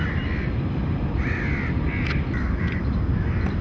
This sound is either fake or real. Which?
real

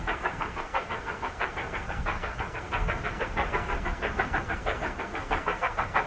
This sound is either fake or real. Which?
fake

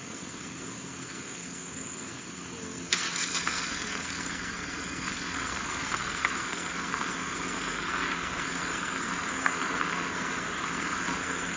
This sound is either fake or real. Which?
fake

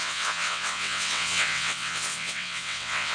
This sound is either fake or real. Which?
fake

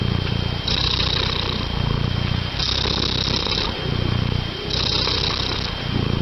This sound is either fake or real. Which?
fake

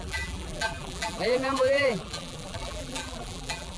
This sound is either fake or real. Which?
fake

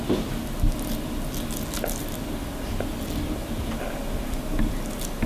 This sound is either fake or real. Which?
real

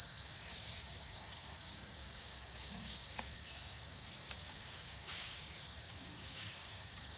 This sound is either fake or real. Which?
fake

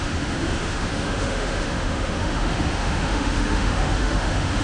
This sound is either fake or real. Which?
fake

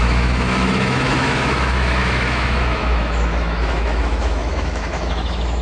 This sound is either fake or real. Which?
fake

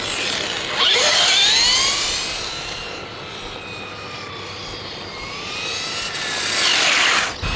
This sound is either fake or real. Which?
real